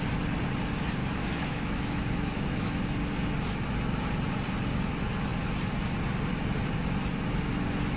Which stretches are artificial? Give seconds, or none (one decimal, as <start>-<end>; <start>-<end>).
1.0-2.8